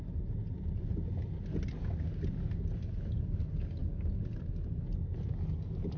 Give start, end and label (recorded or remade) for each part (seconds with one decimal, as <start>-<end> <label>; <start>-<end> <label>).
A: 0.0-6.0 recorded